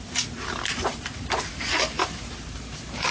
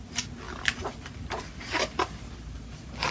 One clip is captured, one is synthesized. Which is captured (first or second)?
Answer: second